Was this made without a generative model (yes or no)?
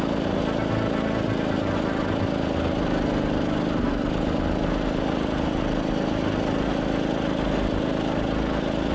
yes